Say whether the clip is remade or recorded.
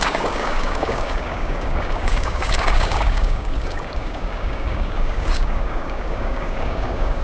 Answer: remade